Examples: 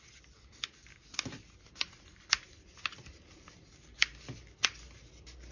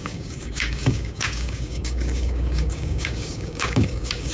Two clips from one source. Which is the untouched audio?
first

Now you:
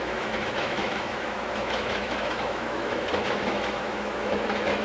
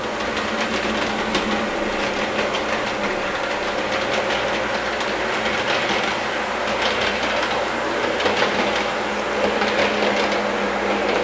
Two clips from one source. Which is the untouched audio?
second